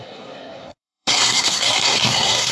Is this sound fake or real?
fake